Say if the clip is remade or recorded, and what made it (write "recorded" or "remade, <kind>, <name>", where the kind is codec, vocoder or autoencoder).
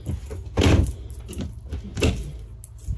recorded